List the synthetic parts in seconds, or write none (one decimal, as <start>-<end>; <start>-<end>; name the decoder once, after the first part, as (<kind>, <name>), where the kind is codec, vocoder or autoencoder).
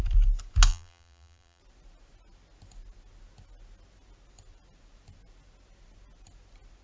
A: 0.7-1.6 (vocoder, BigVGAN v2)